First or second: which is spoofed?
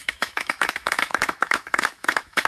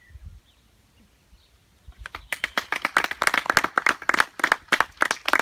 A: first